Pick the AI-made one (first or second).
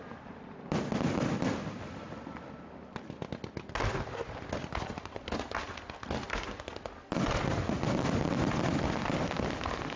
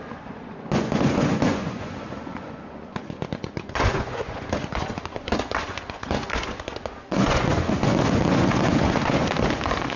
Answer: second